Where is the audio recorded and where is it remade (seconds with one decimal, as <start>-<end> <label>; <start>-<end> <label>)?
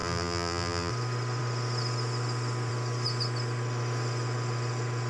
0.0-0.9 remade; 0.9-5.1 recorded